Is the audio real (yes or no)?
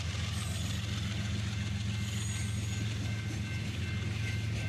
yes